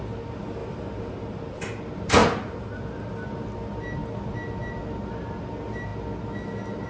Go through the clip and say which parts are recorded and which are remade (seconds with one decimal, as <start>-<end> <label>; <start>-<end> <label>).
0.0-0.6 recorded; 0.6-1.1 remade; 1.1-2.2 recorded; 2.2-2.8 remade; 2.8-6.9 recorded